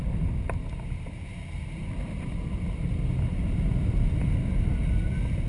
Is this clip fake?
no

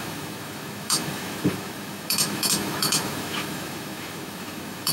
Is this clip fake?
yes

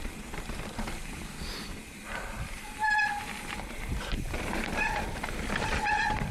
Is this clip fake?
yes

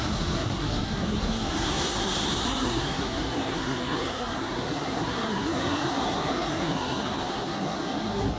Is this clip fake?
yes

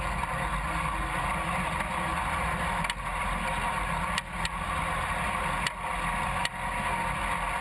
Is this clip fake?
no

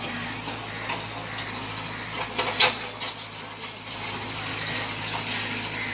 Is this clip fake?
no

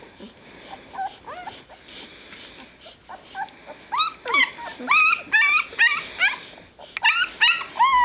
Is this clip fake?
no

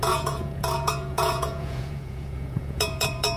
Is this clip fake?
yes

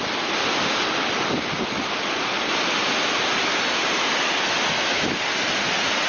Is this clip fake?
no